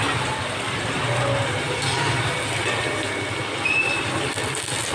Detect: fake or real fake